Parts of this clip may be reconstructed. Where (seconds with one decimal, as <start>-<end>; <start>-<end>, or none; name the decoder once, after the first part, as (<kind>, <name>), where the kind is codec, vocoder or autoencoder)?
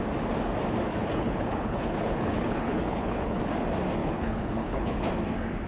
0.9-3.4 (codec, HILCodec); 4.0-5.1